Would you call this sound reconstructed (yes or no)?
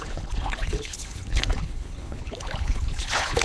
yes